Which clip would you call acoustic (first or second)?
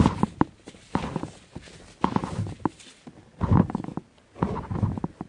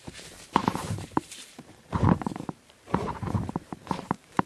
first